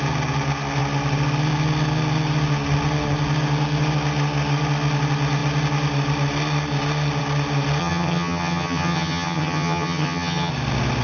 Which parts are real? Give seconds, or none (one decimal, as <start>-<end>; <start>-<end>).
0.0-7.8; 10.5-11.0